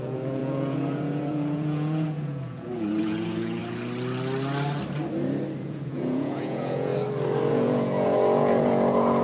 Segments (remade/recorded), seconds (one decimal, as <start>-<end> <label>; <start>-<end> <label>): 0.0-3.6 remade; 3.6-5.6 recorded; 5.6-6.9 remade; 6.9-7.5 recorded; 7.5-9.2 remade